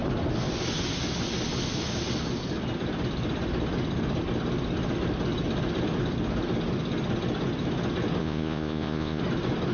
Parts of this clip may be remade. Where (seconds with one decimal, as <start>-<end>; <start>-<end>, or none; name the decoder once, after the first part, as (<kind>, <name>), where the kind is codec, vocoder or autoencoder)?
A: 8.2-9.2 (vocoder, Vocos)